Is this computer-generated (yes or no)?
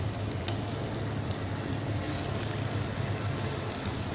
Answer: no